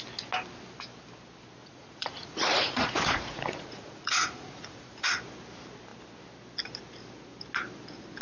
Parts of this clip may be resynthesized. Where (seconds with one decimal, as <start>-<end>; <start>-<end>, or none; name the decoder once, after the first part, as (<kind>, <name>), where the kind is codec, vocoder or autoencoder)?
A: 1.6-5.2 (vocoder, Vocos)